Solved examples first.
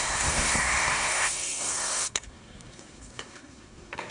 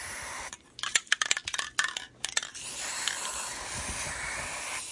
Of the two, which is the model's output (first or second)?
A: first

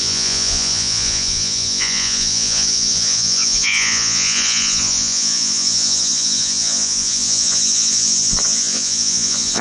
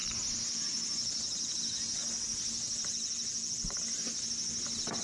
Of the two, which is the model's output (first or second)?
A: first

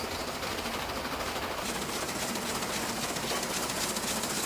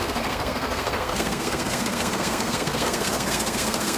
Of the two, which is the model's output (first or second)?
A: second